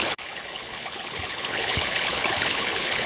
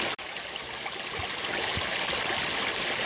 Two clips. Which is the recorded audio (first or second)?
second